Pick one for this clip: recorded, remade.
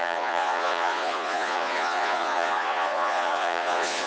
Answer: remade